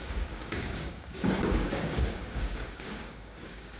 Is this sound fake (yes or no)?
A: yes